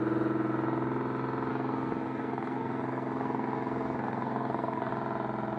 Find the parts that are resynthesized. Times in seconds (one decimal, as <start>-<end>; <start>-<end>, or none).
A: 1.5-4.9